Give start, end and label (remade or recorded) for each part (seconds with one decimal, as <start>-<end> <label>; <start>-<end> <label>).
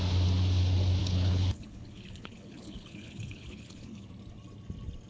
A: 0.0-1.0 recorded; 1.0-4.1 remade; 4.1-5.1 recorded